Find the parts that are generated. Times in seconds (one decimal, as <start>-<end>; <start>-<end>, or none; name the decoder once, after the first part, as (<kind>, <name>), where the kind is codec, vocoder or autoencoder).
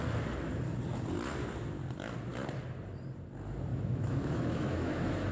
3.7-5.3 (autoencoder, DAC-VAE)